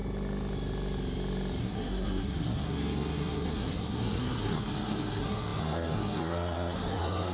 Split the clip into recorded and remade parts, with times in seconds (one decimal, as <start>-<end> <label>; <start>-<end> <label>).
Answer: 0.0-1.6 recorded; 1.6-7.3 remade